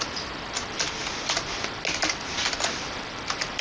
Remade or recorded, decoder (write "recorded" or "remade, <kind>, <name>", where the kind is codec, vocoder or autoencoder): recorded